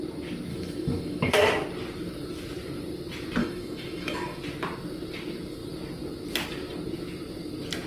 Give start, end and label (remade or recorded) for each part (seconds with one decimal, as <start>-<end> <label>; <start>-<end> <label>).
0.0-0.5 recorded; 0.5-1.4 remade; 1.4-3.4 recorded; 3.4-4.4 remade; 4.4-7.9 recorded